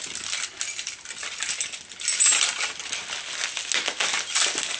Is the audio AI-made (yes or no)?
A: no